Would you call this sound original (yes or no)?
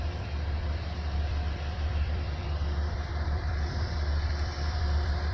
no